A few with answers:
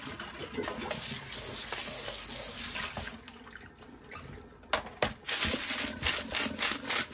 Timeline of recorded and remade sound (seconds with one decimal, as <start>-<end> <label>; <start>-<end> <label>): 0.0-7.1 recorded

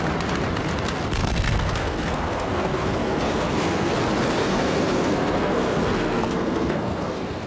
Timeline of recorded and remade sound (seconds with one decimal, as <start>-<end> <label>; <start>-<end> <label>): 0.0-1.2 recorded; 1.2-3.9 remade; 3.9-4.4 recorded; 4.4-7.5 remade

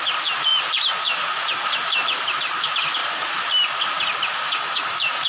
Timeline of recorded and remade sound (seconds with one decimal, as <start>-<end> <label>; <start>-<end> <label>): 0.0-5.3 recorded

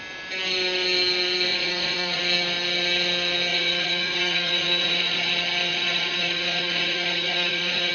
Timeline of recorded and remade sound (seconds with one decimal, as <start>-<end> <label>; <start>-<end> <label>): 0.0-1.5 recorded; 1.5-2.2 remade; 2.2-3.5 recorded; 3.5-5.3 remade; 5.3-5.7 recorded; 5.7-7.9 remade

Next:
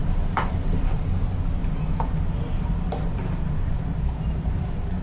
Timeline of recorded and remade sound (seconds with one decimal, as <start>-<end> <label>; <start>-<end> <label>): 0.0-1.0 remade; 1.0-1.6 recorded; 1.6-4.6 remade; 4.6-5.0 recorded

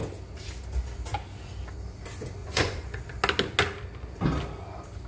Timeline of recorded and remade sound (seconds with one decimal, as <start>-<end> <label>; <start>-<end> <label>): 0.0-2.4 recorded; 2.4-3.0 remade; 3.0-5.1 recorded